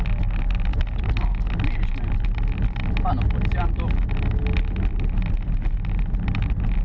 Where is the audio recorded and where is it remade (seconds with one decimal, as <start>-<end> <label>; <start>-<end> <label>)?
0.0-6.8 recorded